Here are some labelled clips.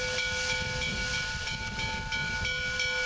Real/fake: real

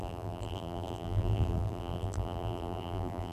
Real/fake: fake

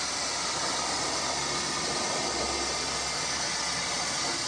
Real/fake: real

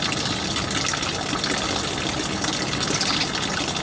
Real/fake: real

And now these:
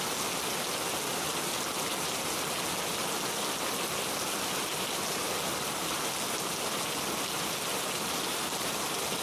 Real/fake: real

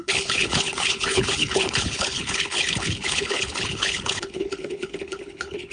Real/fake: fake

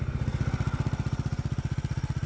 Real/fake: real